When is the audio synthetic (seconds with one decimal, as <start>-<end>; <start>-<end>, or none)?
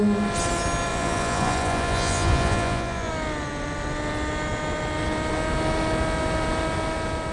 0.9-3.1